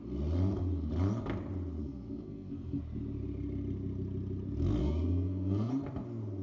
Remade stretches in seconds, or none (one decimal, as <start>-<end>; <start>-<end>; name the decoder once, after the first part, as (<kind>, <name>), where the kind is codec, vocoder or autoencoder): 1.8-2.8 (codec, SNAC); 4.8-5.7